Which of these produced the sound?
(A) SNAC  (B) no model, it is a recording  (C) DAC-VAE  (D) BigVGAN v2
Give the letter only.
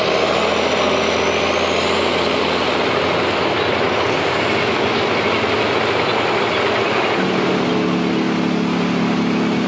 B